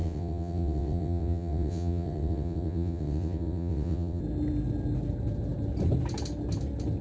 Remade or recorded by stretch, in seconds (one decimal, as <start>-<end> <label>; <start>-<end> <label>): 0.0-4.2 remade; 4.2-7.0 recorded